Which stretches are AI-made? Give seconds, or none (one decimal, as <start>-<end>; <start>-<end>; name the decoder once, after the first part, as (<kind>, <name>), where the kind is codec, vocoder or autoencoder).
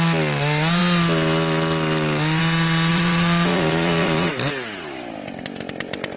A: 2.9-4.3 (vocoder, Vocos)